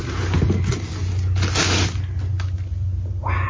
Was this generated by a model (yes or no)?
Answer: no